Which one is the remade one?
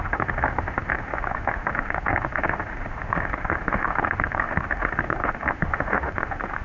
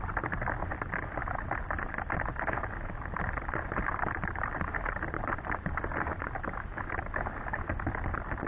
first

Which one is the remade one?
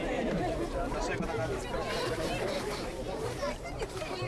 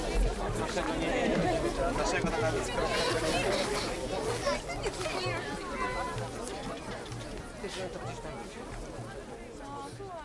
first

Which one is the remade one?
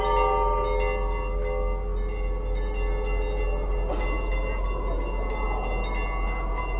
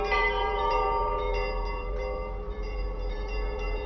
second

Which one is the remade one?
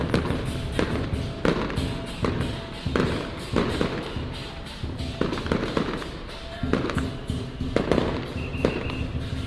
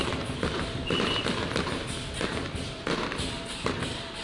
second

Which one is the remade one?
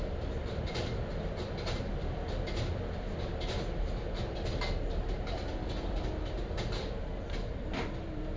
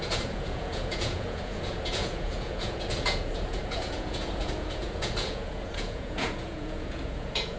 second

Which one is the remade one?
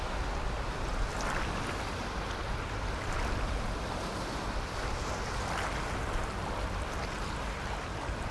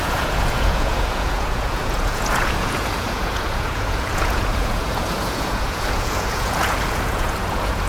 second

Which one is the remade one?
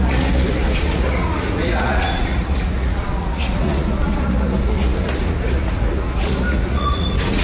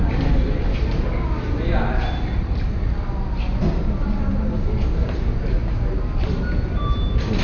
first